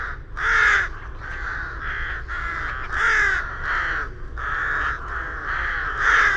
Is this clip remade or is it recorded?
recorded